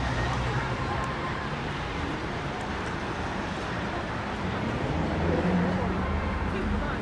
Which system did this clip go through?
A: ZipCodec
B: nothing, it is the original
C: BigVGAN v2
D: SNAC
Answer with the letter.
C